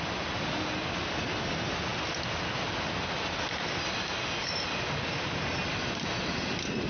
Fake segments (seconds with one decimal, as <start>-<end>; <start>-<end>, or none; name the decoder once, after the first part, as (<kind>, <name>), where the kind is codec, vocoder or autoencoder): none